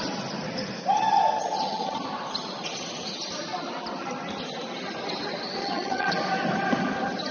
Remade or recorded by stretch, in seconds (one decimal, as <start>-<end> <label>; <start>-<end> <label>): 0.0-1.4 recorded; 1.4-2.0 remade; 2.0-5.6 recorded; 5.6-6.1 remade; 6.1-7.3 recorded